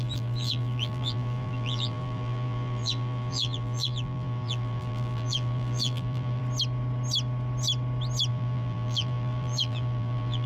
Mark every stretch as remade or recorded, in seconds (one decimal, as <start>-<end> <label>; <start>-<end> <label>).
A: 0.0-6.4 remade; 6.4-8.3 recorded; 8.3-10.5 remade